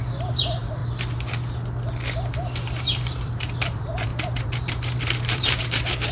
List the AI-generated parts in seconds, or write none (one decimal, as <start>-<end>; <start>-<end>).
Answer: 0.0-0.8; 2.3-6.1